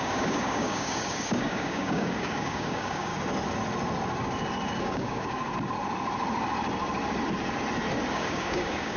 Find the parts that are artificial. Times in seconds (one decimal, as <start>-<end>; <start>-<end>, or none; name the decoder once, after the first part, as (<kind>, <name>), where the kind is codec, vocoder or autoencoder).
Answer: 0.0-3.1 (codec, DAC); 4.8-5.4; 8.1-9.0